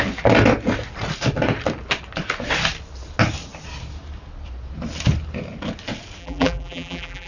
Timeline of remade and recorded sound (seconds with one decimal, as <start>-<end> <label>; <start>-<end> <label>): 0.0-6.2 recorded; 6.2-7.3 remade